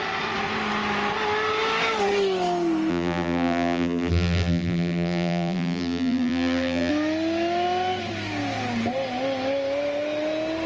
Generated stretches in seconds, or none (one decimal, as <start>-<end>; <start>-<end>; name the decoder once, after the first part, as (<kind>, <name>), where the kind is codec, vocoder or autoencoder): 2.9-6.9 (vocoder, BigVGAN v2)